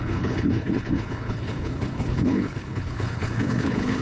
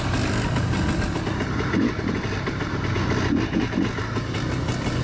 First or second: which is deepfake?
first